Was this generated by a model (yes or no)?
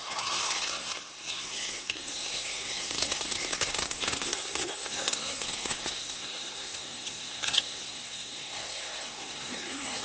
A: yes